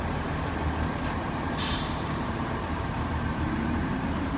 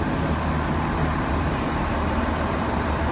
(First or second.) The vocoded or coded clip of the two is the first